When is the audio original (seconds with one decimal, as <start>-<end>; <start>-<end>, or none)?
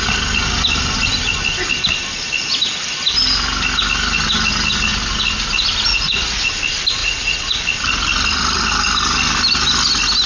0.0-5.9; 6.5-7.0; 7.6-10.3